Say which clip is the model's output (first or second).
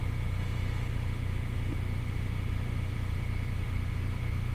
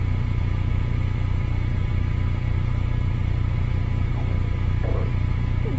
first